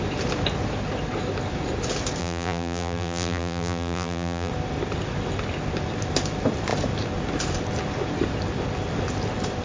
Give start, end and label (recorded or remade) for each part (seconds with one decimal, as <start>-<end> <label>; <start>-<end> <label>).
0.0-2.2 recorded; 2.2-4.5 remade; 4.5-9.6 recorded